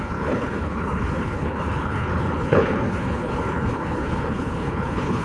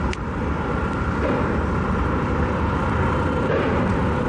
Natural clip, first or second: second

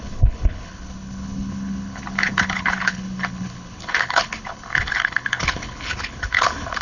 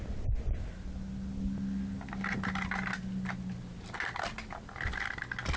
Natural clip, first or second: second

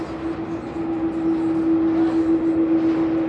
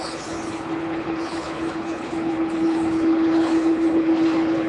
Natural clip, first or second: first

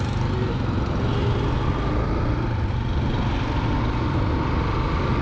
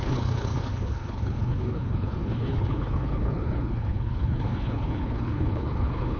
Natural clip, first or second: first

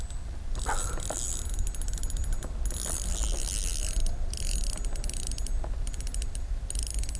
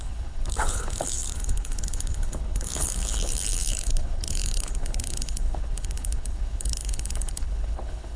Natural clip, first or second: first